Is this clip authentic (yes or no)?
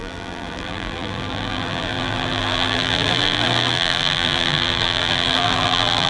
no